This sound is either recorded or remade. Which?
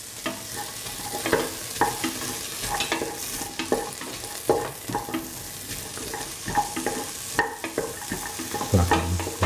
recorded